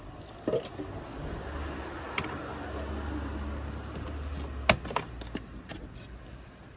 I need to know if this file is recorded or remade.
recorded